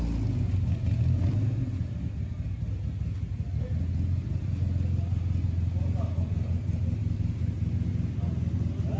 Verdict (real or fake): real